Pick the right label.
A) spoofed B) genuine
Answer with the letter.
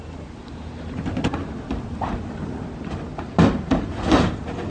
B